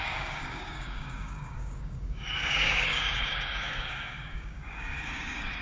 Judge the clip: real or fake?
fake